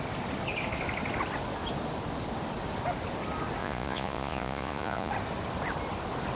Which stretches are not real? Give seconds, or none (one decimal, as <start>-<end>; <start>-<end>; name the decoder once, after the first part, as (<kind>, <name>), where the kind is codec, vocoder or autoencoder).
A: 3.6-5.1 (vocoder, Vocos)